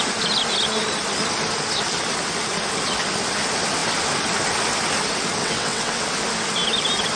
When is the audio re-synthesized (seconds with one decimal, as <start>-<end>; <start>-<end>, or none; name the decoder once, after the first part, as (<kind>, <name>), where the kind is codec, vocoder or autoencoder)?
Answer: 5.4-6.0 (vocoder, WaveNeXt)